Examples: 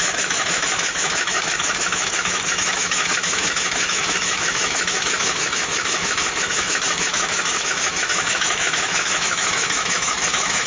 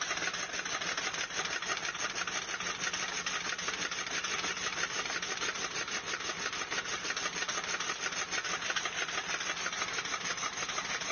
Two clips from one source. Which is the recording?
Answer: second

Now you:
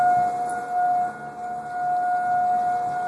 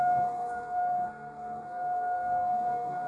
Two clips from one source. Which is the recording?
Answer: first